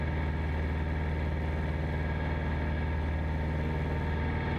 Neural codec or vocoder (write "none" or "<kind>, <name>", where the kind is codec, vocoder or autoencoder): none